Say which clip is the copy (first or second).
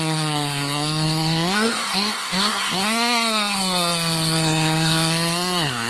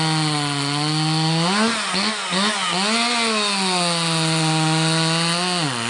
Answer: first